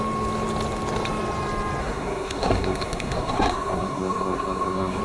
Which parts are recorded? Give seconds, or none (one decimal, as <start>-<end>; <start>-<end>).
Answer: 0.0-1.8